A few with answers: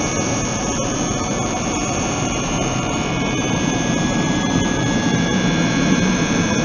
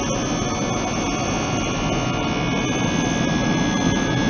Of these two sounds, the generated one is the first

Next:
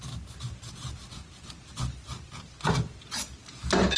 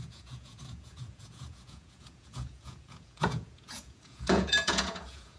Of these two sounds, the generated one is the second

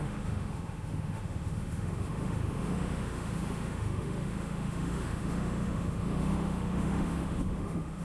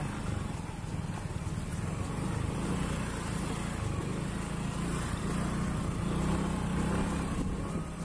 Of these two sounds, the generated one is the first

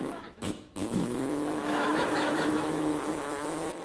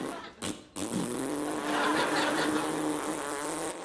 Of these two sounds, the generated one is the first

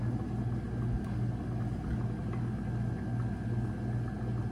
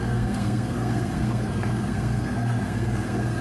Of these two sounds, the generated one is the second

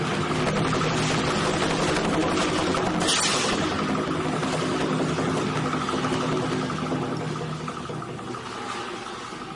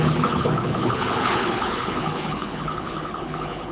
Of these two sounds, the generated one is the second